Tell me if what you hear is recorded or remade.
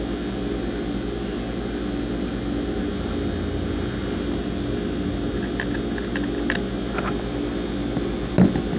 recorded